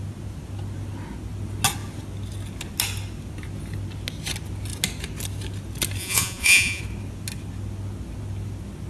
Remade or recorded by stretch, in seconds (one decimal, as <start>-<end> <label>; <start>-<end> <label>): 0.0-6.0 recorded; 6.0-6.8 remade; 6.8-8.9 recorded